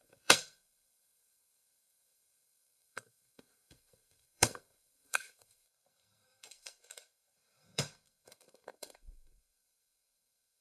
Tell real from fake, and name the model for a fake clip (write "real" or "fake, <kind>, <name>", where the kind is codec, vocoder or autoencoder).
fake, codec, SNAC